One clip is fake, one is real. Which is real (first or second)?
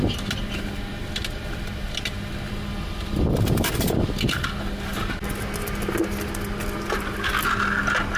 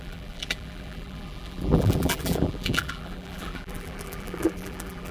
first